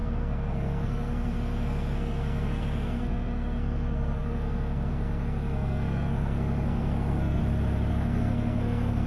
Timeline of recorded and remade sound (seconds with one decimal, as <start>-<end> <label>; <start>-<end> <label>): 0.0-7.4 remade; 7.4-7.9 recorded; 7.9-9.1 remade